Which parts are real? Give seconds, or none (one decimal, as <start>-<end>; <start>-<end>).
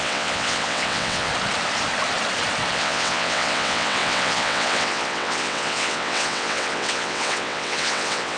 1.3-2.7